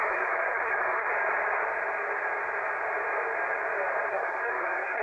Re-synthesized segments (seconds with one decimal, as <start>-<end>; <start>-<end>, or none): 0.0-1.1; 4.1-5.0